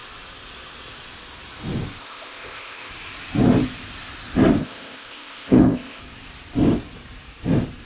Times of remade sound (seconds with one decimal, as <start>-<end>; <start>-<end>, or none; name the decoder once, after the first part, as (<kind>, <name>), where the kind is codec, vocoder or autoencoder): 2.0-2.9 (codec, ZipCodec); 4.6-6.0